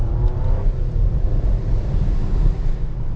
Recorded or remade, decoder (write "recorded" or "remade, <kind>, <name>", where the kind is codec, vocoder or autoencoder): recorded